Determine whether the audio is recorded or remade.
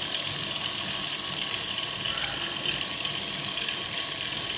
recorded